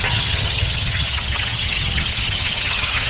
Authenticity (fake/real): fake